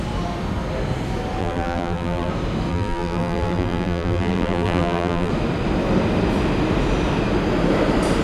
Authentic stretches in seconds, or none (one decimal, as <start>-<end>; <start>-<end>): 0.0-1.4; 2.3-2.7; 5.3-8.2